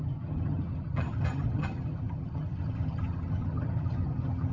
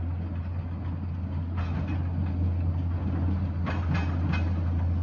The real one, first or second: second